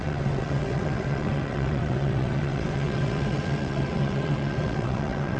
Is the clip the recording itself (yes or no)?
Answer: no